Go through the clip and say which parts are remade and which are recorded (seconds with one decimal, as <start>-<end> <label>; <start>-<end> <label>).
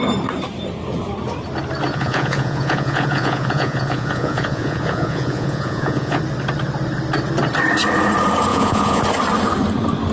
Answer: 0.0-1.9 recorded; 1.9-6.2 remade; 6.2-8.5 recorded; 8.5-9.0 remade; 9.0-10.1 recorded